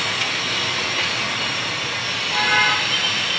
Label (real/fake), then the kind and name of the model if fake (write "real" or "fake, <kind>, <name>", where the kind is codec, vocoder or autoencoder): real